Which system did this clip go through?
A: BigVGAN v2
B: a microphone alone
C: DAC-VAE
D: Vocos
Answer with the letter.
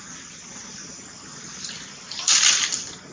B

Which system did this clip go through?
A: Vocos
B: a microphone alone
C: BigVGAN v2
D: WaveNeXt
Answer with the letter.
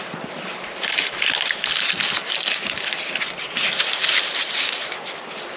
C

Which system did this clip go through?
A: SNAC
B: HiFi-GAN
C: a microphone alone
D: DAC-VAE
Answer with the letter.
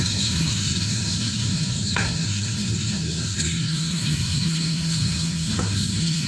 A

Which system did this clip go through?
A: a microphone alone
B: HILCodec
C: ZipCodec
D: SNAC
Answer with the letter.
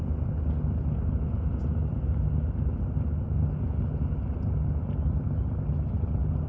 A